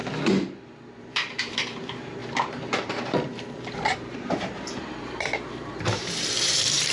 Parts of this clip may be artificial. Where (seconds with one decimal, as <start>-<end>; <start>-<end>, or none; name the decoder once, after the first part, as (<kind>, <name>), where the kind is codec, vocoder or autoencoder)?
1.0-6.9 (vocoder, BigVGAN v2)